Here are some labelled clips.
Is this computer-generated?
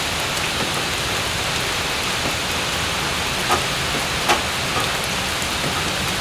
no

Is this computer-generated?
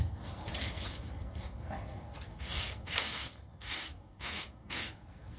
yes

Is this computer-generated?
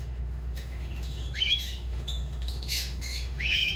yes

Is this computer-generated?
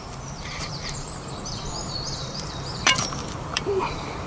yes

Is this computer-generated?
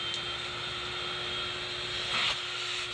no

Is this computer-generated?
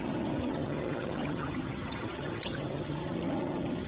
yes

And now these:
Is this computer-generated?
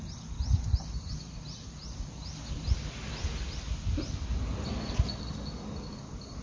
no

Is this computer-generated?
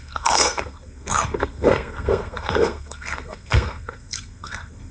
yes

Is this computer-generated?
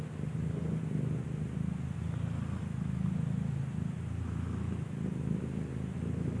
no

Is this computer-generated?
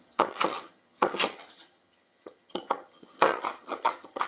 yes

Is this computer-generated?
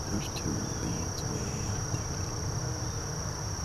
yes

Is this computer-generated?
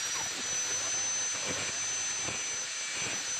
no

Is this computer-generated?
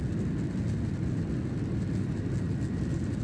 no